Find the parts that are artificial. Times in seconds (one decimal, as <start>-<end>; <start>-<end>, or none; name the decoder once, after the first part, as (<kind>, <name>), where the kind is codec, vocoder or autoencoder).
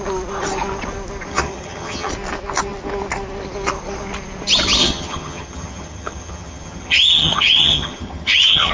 1.3-2.1 (vocoder, HiFi-GAN); 4.8-8.7